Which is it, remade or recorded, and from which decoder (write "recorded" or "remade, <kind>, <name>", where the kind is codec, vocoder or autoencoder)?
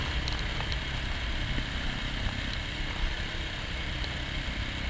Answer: recorded